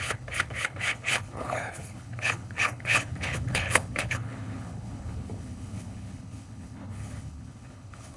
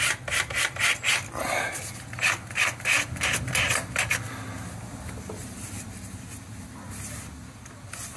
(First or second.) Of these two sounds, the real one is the second